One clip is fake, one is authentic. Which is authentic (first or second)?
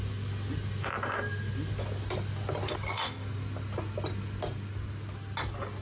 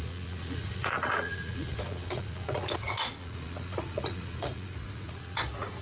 first